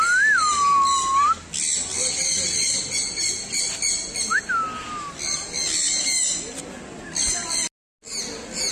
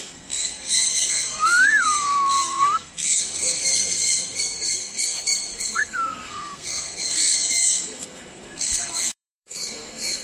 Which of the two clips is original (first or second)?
first